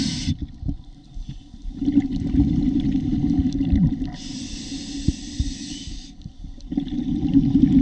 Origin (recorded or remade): recorded